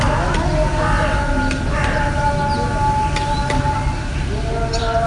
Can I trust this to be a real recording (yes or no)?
yes